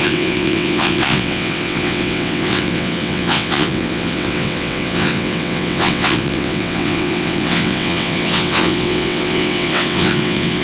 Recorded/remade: remade